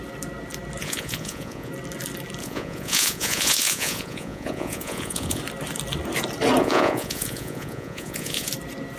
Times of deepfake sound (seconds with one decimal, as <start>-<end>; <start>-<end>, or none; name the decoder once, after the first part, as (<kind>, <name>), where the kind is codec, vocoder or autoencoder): 0.8-1.7 (vocoder, Vocos); 2.4-5.4; 6.6-8.5